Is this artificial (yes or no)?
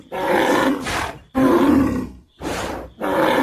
yes